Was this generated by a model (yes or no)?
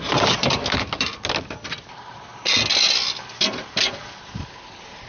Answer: no